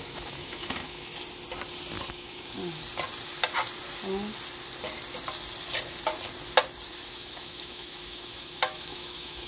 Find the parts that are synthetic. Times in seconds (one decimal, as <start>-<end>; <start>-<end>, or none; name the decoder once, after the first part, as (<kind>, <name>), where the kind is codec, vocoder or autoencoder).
0.0-1.1 (autoencoder, DAC-VAE); 2.1-2.6; 7.1-9.5